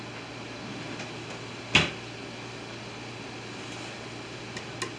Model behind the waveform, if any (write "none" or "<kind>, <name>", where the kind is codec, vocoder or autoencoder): none